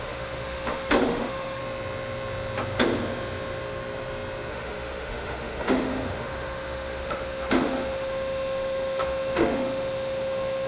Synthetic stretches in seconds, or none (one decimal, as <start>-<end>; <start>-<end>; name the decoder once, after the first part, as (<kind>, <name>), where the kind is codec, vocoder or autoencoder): 0.0-1.6 (autoencoder, DAC-VAE); 4.5-10.7